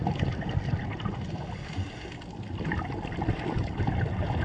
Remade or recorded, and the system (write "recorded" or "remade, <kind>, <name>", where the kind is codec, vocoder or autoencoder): recorded